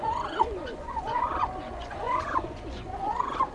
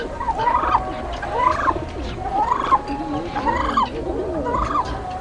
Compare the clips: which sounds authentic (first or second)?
second